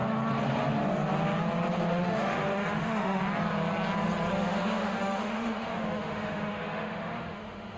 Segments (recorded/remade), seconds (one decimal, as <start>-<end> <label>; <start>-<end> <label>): 0.0-1.9 recorded; 1.9-3.2 remade; 3.2-4.3 recorded; 4.3-7.8 remade